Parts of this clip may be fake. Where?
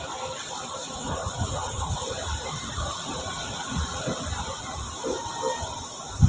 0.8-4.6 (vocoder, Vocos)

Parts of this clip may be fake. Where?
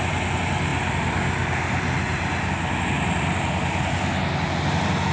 none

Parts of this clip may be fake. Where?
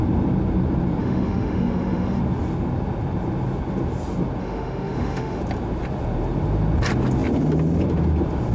1.0-2.2 (autoencoder, DAC-VAE); 4.4-5.4